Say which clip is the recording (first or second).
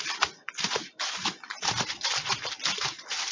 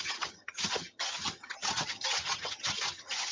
first